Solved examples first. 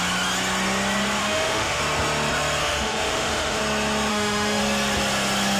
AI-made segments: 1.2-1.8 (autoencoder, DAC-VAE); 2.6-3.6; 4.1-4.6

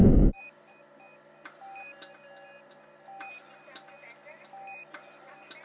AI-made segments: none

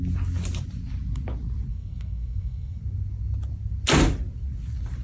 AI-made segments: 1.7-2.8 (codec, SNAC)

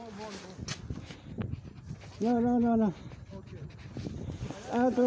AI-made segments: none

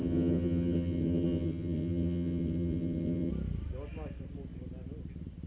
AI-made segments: 0.0-3.3 (vocoder, HiFi-GAN)

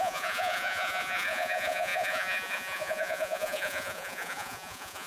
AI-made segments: 0.0-5.1 (vocoder, Vocos)

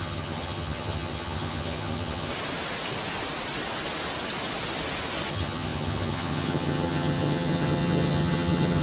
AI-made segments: 0.0-2.3 (vocoder, HiFi-GAN); 5.3-8.8